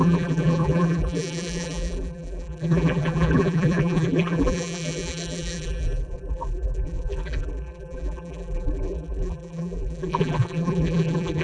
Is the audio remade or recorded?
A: remade